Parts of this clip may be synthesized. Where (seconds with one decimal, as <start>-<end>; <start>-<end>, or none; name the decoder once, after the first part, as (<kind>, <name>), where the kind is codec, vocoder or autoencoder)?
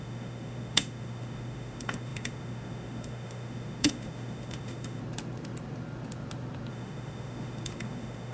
0.0-5.0 (autoencoder, DAC-VAE); 6.7-8.3